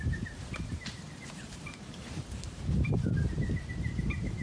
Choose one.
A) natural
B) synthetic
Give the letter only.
B